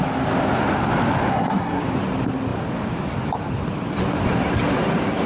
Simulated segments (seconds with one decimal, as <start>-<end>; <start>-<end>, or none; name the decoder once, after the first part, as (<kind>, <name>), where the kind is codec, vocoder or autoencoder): 1.3-1.8 (codec, SNAC)